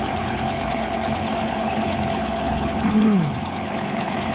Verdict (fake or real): fake